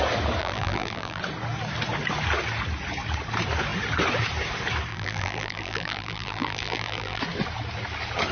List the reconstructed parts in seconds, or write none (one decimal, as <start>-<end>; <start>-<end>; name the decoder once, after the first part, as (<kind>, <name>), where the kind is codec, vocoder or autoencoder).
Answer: 0.4-1.2 (vocoder, BigVGAN v2); 4.9-7.2